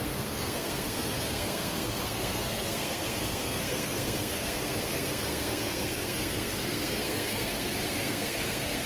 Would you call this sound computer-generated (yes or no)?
yes